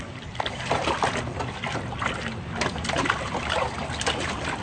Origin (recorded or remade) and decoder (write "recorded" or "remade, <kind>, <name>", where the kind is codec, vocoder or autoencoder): recorded